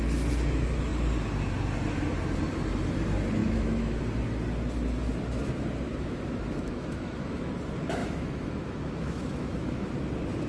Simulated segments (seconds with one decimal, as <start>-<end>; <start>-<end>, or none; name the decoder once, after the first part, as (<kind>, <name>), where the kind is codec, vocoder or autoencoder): 3.4-4.0 (autoencoder, DAC-VAE); 5.9-7.5; 8.0-9.9